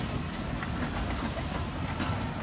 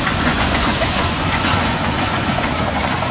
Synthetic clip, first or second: second